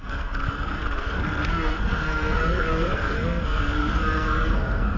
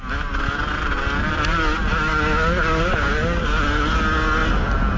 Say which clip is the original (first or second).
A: second